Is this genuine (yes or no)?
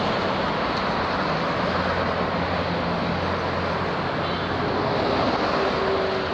yes